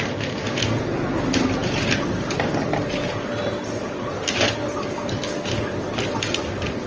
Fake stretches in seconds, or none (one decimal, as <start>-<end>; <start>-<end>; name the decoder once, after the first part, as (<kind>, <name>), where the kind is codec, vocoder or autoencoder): none

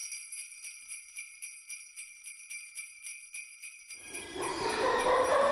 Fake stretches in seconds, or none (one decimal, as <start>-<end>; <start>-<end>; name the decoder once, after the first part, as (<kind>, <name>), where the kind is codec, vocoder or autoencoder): 2.5-3.1 (vocoder, BigVGAN v2); 3.7-5.5

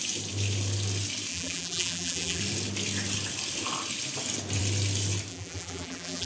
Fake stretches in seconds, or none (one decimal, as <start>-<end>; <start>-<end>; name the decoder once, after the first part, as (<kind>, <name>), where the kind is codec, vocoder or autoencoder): 1.3-2.4 (vocoder, BigVGAN v2); 5.3-6.3

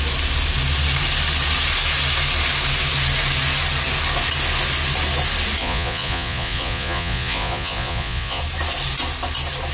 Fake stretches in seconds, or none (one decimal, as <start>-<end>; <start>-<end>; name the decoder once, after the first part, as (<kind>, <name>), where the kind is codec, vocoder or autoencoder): 5.6-8.4 (vocoder, Vocos)

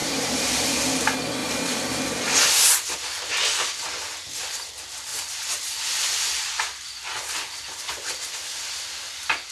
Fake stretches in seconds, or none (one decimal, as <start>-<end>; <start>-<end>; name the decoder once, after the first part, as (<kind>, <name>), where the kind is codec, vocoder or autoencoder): 0.0-0.8 (vocoder, BigVGAN v2); 1.4-1.9; 5.1-5.8

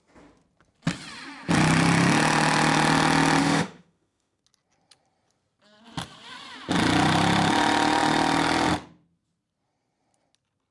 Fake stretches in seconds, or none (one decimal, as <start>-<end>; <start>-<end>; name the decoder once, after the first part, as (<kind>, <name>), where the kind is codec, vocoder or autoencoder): 3.4-4.4 (autoencoder, DAC-VAE)

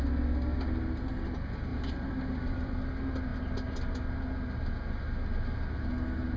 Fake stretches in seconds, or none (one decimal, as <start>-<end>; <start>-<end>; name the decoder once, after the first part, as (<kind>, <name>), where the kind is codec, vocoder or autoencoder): 1.7-2.8 (vocoder, BigVGAN v2)